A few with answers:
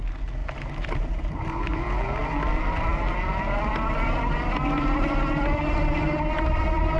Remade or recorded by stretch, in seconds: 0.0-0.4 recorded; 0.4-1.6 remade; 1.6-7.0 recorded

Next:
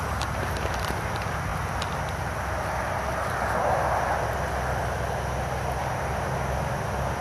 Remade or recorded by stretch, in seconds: 0.0-7.2 recorded

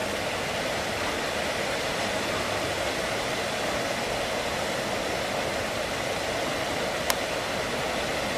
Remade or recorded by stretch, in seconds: 0.0-8.4 recorded

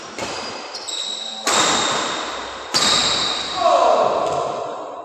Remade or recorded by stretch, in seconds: 0.0-3.0 remade; 3.0-4.5 recorded; 4.5-5.0 remade